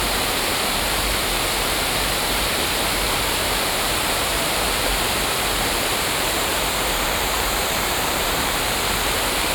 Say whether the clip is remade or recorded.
remade